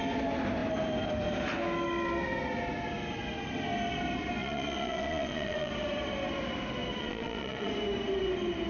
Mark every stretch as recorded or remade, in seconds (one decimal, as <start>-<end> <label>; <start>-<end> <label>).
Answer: 0.0-4.4 recorded; 4.4-5.7 remade; 5.7-7.0 recorded; 7.0-7.7 remade; 7.7-8.7 recorded